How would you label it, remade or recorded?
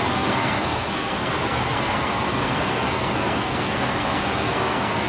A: remade